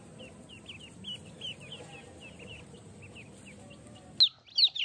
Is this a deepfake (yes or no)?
no